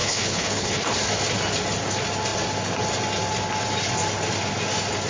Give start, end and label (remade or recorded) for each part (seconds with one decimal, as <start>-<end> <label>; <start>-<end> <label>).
0.0-0.9 remade; 0.9-5.1 recorded